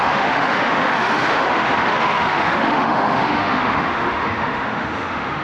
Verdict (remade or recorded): remade